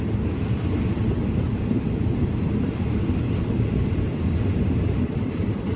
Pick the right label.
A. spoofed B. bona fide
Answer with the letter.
B